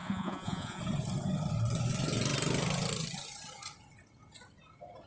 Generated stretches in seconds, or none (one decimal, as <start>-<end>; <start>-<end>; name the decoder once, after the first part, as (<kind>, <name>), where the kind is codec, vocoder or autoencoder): 0.0-0.8 (vocoder, Vocos)